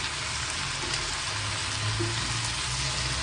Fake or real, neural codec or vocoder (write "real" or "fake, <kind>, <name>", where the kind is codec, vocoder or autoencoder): real